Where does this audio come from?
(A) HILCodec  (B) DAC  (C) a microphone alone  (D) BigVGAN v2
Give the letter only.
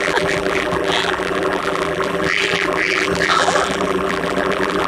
D